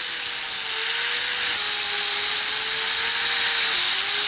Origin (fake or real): real